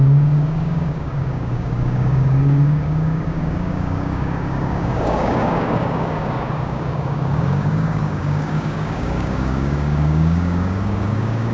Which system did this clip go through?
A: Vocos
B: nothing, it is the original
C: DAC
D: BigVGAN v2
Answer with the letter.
C